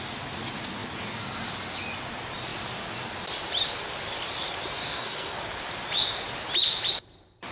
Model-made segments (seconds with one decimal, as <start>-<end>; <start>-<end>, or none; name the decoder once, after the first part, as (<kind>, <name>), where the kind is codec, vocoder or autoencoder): 4.8-5.4 (codec, SNAC)